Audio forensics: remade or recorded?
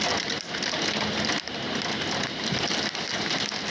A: recorded